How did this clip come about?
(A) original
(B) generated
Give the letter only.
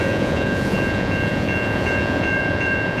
B